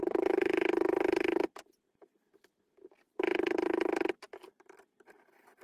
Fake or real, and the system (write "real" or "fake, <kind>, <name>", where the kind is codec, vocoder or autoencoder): fake, vocoder, BigVGAN v2